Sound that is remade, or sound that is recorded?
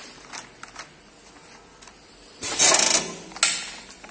recorded